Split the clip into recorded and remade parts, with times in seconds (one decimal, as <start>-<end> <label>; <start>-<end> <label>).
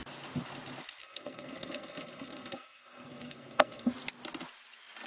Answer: 0.0-1.0 recorded; 1.0-3.9 remade; 3.9-5.1 recorded